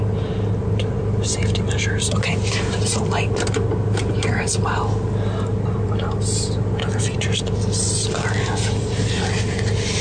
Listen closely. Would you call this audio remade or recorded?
remade